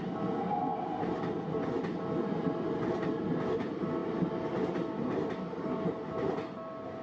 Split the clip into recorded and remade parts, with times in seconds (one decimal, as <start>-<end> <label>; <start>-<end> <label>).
0.0-7.0 recorded